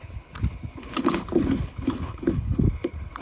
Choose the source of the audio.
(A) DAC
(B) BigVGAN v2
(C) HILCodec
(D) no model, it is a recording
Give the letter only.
C